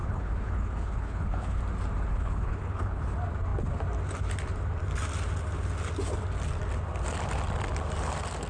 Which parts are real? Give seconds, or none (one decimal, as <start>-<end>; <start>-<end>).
1.6-2.1; 3.0-8.5